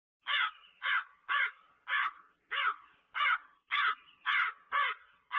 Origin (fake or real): real